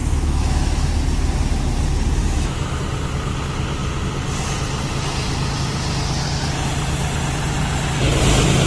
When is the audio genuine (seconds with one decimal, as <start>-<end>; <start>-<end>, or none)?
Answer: 0.9-2.2; 2.8-8.7